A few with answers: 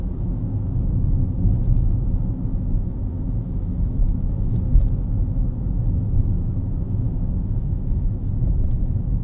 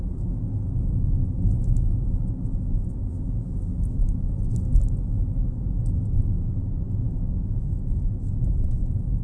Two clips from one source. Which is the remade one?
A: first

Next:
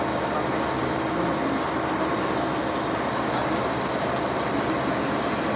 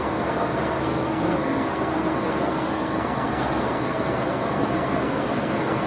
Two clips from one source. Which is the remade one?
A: second